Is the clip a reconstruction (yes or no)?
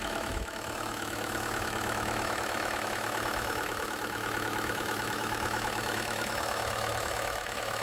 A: yes